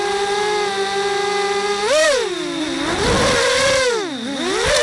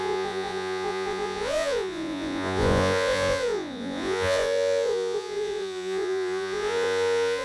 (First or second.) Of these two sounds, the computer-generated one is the second